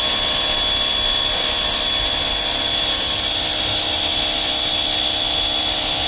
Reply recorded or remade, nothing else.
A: recorded